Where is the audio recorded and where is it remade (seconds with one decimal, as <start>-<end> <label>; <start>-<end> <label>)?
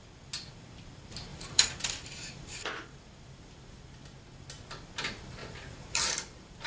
0.0-1.3 recorded; 1.3-3.0 remade; 3.0-5.4 recorded; 5.4-6.7 remade